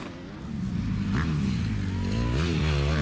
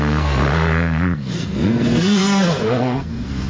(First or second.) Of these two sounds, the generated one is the second